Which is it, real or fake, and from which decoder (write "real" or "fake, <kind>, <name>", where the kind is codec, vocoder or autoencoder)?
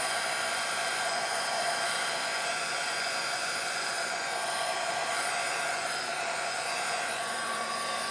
fake, vocoder, Vocos